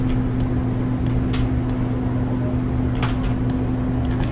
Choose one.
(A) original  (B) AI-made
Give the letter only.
A